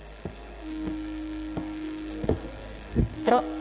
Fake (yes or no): yes